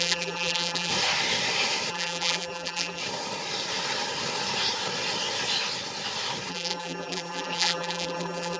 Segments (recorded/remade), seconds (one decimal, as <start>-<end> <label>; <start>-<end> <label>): 0.0-0.9 remade; 0.9-1.9 recorded; 1.9-3.0 remade; 3.0-6.5 recorded; 6.5-8.6 remade